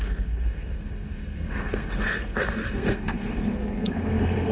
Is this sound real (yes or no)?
no